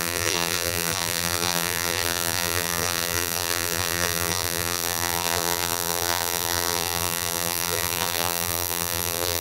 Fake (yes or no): yes